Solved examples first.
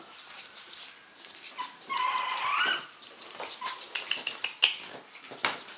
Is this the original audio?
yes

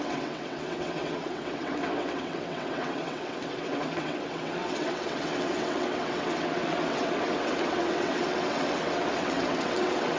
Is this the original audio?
no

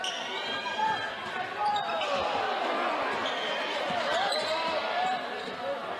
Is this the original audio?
no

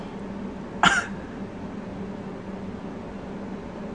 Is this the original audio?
yes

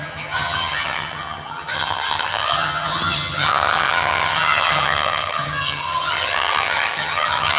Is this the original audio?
no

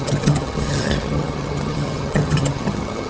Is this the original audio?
no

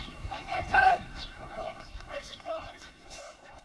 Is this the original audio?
no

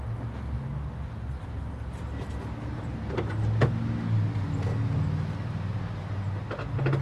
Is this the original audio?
yes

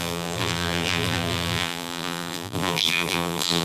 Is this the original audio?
no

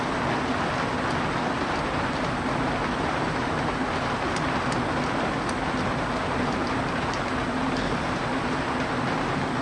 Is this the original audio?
yes